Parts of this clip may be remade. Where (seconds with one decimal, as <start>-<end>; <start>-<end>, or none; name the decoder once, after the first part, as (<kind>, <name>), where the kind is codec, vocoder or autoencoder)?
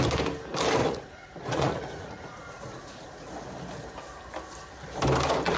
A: 0.8-3.3 (vocoder, Vocos)